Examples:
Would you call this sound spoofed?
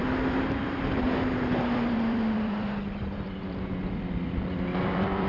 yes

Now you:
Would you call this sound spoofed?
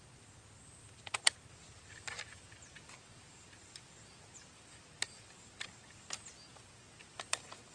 yes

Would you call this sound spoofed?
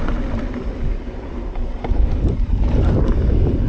yes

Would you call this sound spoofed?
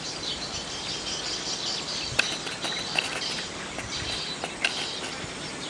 yes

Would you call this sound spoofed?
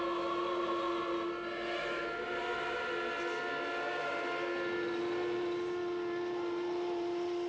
no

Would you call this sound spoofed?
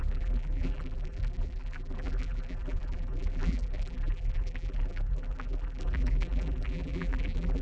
yes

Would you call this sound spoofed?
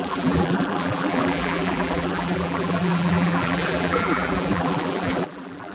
yes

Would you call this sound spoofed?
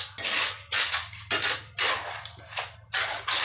no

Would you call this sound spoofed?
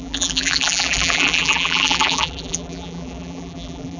yes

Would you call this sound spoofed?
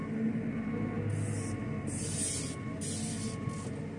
no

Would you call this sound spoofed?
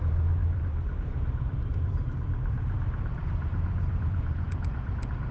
yes